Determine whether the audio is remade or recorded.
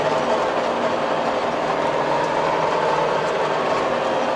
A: recorded